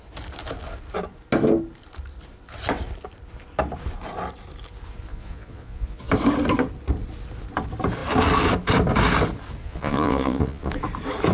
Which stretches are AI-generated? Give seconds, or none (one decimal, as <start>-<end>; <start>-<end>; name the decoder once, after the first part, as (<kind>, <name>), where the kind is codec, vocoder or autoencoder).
5.1-6.1 (vocoder, Vocos); 9.6-10.7